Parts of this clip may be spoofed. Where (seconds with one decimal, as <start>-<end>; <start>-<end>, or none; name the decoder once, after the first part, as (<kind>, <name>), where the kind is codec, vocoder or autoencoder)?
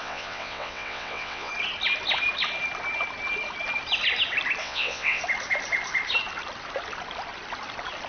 0.0-1.5 (vocoder, WaveNeXt); 4.6-5.2